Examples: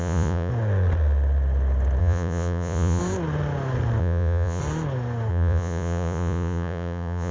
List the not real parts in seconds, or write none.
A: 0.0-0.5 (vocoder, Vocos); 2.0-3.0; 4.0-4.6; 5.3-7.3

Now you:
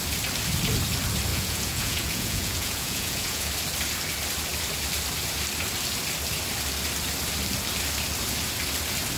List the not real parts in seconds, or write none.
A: 1.3-3.5 (vocoder, Vocos)

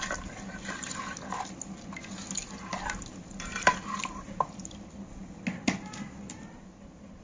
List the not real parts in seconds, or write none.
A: none

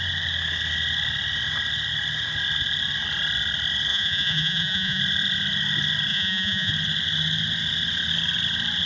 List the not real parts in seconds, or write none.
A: 3.9-5.0 (vocoder, Vocos); 6.1-6.7